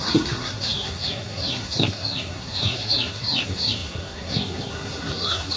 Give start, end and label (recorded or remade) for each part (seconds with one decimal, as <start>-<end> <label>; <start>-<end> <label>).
0.0-5.6 remade